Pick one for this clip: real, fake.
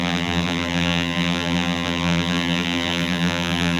fake